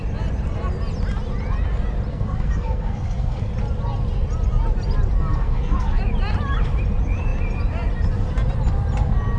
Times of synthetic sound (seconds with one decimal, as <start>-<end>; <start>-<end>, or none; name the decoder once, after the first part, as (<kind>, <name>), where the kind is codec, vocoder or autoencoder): 2.1-3.5 (codec, SNAC); 5.3-6.0